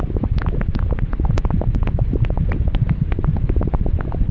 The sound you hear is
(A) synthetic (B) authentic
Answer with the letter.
B